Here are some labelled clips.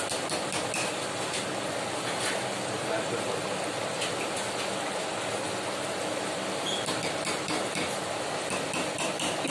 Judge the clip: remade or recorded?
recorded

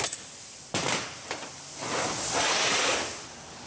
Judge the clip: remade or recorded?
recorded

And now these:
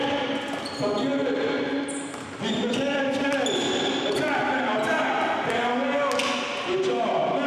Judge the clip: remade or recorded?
recorded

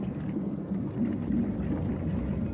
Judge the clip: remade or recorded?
recorded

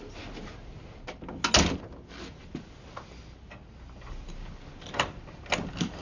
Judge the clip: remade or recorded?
recorded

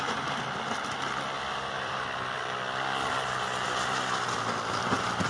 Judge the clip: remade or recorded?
recorded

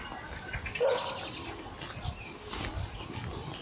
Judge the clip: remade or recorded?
recorded